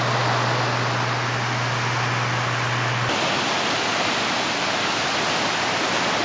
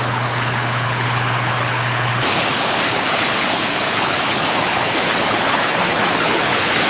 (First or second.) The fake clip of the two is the second